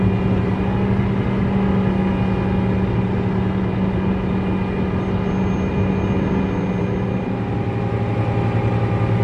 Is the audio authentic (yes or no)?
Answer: yes